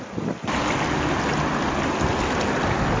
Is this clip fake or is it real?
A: real